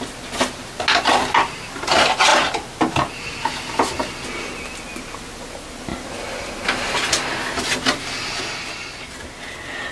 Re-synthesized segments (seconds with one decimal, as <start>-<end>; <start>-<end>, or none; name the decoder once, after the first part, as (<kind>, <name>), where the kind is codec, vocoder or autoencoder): 5.9-6.6 (vocoder, BigVGAN v2)